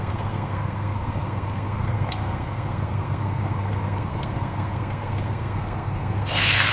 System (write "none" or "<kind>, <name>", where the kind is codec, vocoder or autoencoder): codec, SNAC